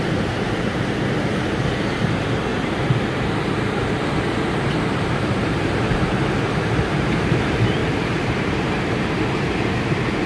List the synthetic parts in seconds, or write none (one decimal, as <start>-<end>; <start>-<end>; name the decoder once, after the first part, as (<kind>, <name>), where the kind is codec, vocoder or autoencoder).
0.0-2.5 (vocoder, BigVGAN v2); 4.9-10.3